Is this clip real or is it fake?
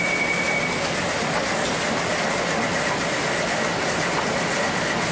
real